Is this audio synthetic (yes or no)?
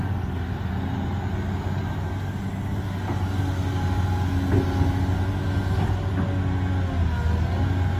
no